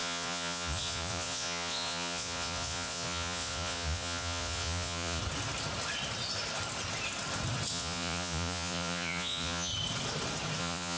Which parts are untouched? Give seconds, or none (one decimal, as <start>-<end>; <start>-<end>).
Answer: 5.2-7.7; 9.7-10.6